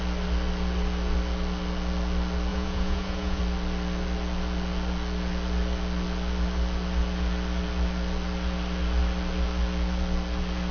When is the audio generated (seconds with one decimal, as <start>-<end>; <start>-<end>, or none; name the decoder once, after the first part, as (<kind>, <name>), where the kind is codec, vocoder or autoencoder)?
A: 2.5-3.4 (vocoder, Vocos)